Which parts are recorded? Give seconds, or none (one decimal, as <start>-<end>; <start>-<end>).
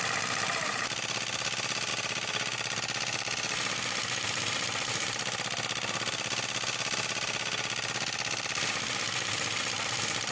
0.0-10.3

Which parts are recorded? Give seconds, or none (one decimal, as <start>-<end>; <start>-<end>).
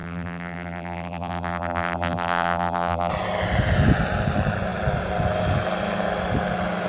3.1-6.9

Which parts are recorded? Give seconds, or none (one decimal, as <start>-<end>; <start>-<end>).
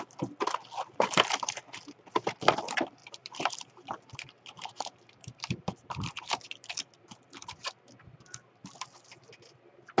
0.0-3.0; 6.4-10.0